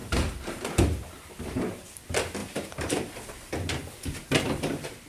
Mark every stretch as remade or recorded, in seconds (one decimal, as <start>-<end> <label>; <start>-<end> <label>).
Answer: 0.0-0.6 remade; 0.6-2.4 recorded; 2.4-3.5 remade; 3.5-5.1 recorded